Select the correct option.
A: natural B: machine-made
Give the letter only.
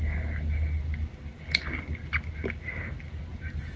A